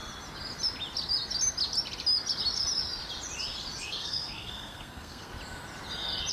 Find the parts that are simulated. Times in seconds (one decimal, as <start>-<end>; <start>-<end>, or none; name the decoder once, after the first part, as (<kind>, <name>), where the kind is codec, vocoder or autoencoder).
3.8-5.3 (codec, SNAC)